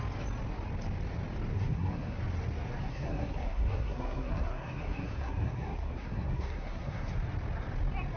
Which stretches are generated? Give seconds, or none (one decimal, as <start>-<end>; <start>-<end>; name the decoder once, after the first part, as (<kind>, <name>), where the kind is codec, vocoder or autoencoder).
1.5-2.2 (codec, SNAC); 2.9-7.1